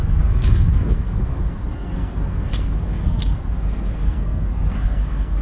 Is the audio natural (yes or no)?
no